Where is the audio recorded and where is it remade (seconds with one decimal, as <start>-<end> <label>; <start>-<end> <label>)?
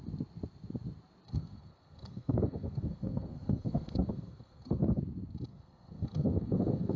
0.0-1.3 recorded; 1.3-5.0 remade; 5.0-5.5 recorded; 5.5-7.0 remade